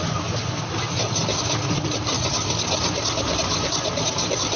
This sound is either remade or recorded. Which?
recorded